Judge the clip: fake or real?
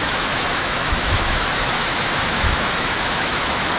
fake